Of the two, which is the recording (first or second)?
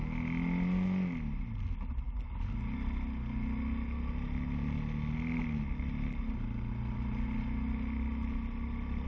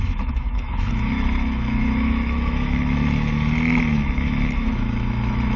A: first